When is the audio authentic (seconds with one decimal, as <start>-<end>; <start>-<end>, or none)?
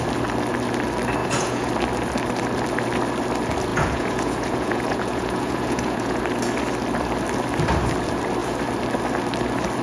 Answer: 0.0-1.2; 1.7-3.7; 6.2-9.8